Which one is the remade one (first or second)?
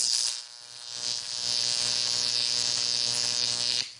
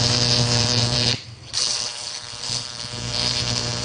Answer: second